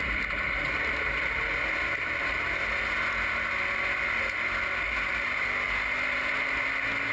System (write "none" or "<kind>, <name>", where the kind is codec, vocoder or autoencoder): none